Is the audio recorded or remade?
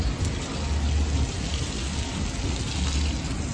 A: recorded